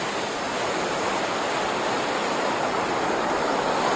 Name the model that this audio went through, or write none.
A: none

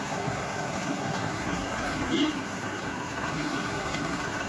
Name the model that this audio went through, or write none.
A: codec, SNAC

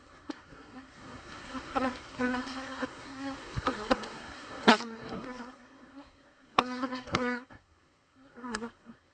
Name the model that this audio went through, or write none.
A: codec, SNAC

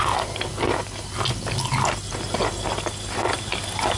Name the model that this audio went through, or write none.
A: none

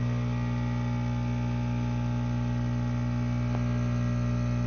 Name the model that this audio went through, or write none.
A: none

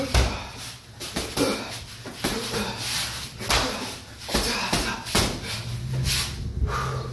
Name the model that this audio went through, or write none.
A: none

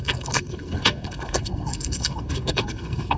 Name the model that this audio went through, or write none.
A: codec, SNAC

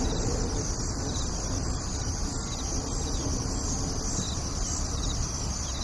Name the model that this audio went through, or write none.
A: none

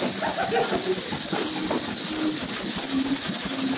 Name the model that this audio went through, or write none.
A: none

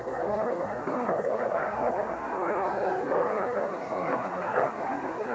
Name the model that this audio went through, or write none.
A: codec, SNAC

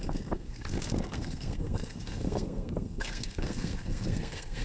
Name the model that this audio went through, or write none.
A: codec, SNAC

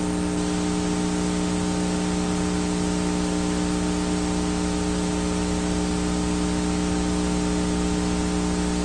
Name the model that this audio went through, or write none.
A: none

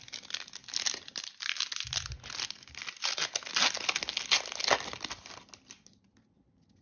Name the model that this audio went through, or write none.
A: none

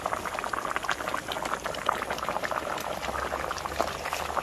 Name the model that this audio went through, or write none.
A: none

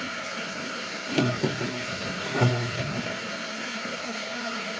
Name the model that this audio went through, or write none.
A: codec, SNAC